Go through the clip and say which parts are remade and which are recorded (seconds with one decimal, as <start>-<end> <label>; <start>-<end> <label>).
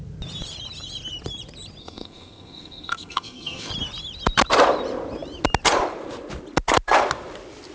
0.0-1.8 recorded; 1.8-3.7 remade; 3.7-7.7 recorded